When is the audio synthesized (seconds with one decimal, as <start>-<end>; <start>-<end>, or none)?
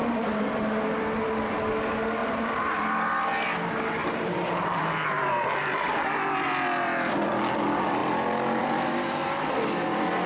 0.0-0.5; 2.2-2.9; 4.0-4.8